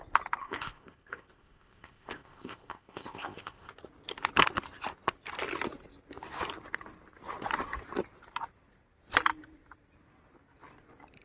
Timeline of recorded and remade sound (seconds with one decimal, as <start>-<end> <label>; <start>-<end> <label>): 0.0-0.4 recorded; 0.4-3.7 remade; 3.7-11.2 recorded